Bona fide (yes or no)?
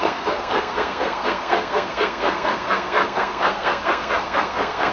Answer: no